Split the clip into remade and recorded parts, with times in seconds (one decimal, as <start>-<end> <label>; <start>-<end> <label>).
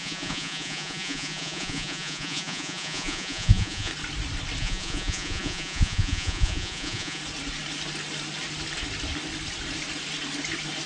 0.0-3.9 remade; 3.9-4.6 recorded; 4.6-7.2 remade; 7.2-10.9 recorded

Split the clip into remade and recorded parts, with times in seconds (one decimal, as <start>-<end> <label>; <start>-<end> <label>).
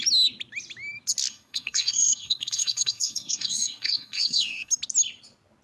0.0-1.3 recorded; 1.3-4.7 remade; 4.7-5.6 recorded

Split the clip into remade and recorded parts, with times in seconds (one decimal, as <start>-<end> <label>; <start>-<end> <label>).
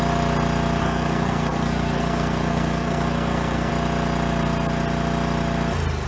0.0-0.8 recorded; 0.8-3.7 remade; 3.7-6.1 recorded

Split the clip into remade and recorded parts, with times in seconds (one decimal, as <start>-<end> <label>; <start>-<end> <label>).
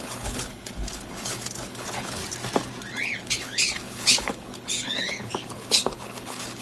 0.0-2.2 remade; 2.2-3.0 recorded; 3.0-6.6 remade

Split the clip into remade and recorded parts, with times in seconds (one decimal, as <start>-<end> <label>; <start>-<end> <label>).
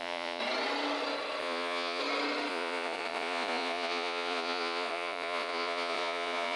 0.0-0.4 remade; 0.4-1.4 recorded; 1.4-2.0 remade; 2.0-2.5 recorded; 2.5-6.6 remade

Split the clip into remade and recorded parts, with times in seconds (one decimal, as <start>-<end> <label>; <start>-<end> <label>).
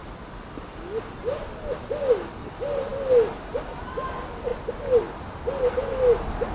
0.0-6.5 recorded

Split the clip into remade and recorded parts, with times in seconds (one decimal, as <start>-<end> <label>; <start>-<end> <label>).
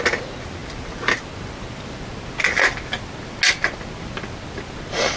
0.0-5.2 recorded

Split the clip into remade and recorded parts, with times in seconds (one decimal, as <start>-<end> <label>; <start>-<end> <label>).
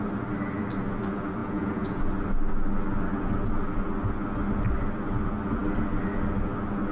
0.0-1.4 recorded; 1.4-2.0 remade; 2.0-6.9 recorded